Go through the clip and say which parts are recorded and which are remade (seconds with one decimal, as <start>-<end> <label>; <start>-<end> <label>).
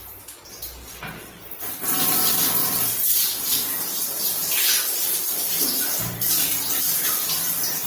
0.0-1.2 recorded; 1.2-1.7 remade; 1.7-2.6 recorded; 2.6-7.3 remade; 7.3-7.9 recorded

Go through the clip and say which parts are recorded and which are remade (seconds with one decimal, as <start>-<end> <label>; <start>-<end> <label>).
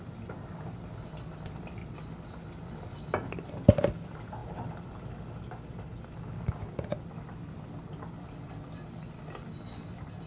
0.0-1.8 recorded; 1.8-2.7 remade; 2.7-10.3 recorded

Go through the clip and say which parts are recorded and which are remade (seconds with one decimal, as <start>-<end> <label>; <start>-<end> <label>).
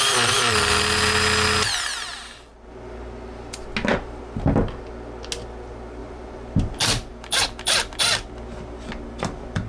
0.0-6.0 recorded; 6.0-8.0 remade; 8.0-9.7 recorded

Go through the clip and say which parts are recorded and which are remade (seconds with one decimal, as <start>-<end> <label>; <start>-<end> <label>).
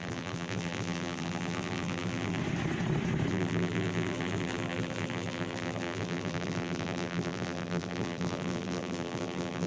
0.0-2.4 remade; 2.4-3.3 recorded; 3.3-9.7 remade